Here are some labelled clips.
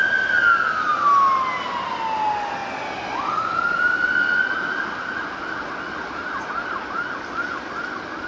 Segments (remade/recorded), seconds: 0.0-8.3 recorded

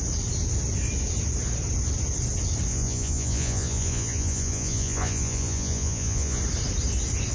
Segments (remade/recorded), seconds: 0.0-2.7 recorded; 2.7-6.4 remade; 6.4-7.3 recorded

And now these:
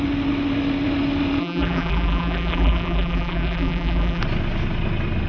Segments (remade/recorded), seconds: 0.0-1.4 recorded; 1.4-4.2 remade; 4.2-5.3 recorded